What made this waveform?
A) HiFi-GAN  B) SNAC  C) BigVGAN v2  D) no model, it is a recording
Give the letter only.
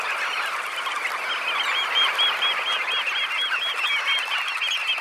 D